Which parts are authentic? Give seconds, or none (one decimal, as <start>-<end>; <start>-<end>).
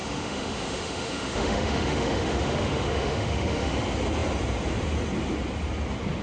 3.7-6.2